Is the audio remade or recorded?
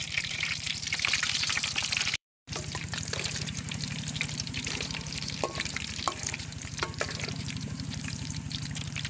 remade